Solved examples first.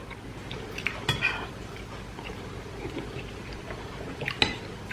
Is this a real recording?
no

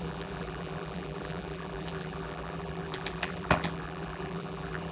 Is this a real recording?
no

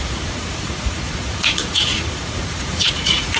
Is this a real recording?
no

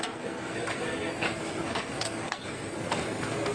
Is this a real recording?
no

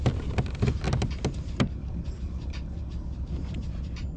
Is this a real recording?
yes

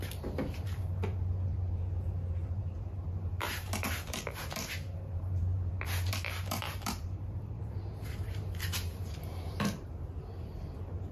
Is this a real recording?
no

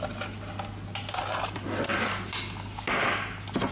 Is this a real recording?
yes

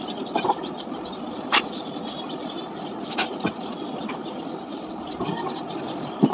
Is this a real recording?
no